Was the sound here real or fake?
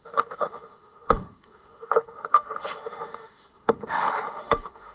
fake